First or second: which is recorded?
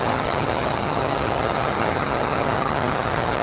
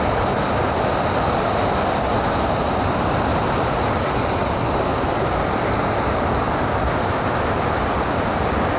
second